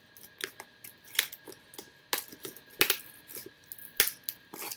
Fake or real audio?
real